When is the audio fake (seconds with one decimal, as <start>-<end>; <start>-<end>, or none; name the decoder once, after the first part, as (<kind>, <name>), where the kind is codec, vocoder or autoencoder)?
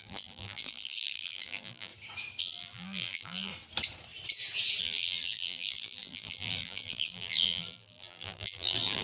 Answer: 0.0-1.9 (vocoder, BigVGAN v2); 2.4-3.5; 4.8-9.0